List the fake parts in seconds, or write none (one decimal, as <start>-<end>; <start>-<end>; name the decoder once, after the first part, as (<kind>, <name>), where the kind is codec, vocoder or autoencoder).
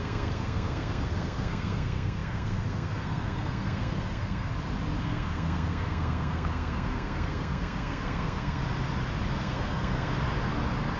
0.0-4.5 (codec, SNAC); 5.0-8.6; 9.4-10.1